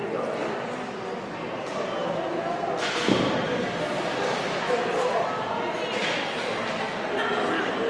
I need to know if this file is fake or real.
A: real